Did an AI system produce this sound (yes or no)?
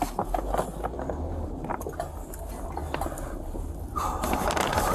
no